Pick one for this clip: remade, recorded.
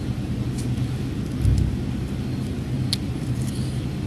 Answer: recorded